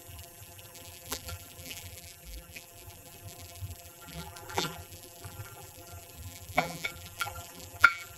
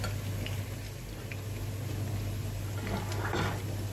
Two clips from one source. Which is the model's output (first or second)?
first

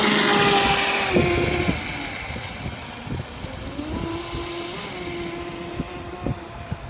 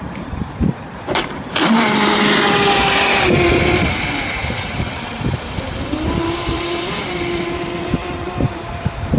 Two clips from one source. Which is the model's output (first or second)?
second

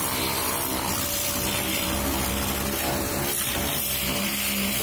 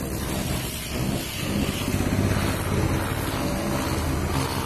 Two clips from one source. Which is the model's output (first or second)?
first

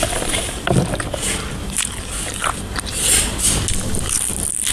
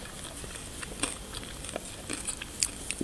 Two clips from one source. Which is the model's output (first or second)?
second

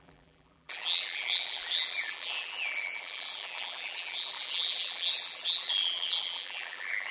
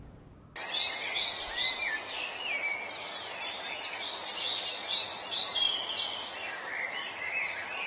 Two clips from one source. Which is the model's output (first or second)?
first